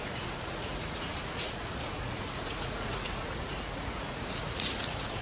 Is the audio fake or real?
fake